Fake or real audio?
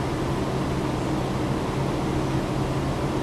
real